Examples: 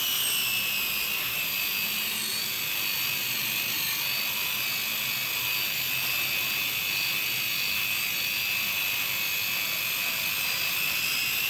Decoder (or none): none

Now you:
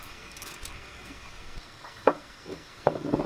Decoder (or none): codec, SNAC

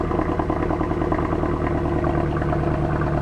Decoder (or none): none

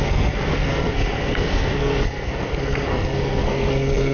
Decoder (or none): codec, SNAC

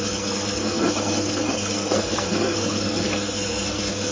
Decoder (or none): codec, SNAC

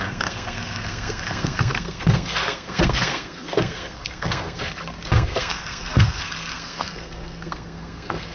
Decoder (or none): codec, SNAC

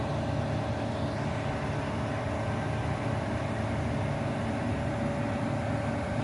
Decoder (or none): none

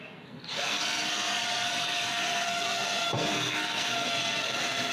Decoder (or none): codec, SNAC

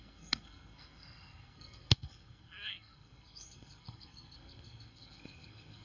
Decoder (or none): codec, SNAC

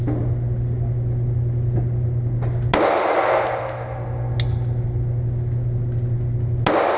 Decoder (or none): none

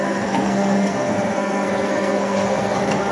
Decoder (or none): codec, SNAC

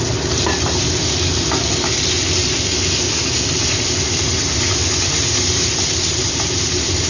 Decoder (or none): none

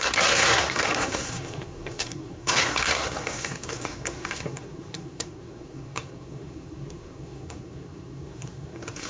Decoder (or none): codec, SNAC